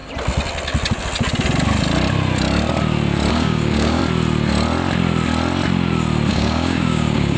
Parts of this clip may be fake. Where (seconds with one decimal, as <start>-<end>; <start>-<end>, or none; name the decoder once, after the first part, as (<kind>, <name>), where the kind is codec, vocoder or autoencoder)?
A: 3.3-4.0 (codec, DAC); 6.3-7.4